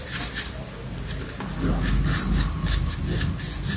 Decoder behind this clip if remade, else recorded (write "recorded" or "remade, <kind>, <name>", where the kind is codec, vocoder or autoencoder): recorded